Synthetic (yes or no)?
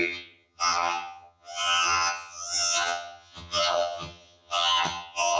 yes